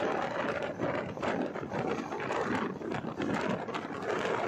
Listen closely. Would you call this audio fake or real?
fake